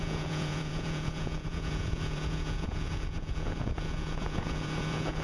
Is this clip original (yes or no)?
no